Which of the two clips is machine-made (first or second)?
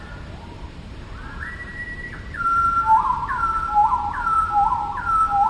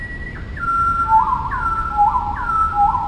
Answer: first